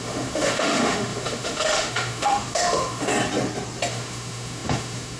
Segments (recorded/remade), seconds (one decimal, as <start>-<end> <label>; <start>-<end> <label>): 0.0-3.1 remade; 3.1-3.9 recorded; 3.9-5.2 remade